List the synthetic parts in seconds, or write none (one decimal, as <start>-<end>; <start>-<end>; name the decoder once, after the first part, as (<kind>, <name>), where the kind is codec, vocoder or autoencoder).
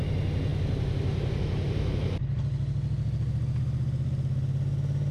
none